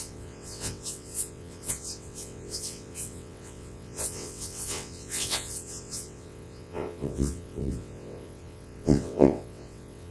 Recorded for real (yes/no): no